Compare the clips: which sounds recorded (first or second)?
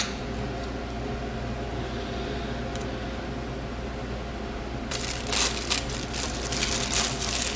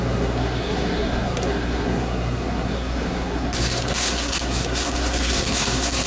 first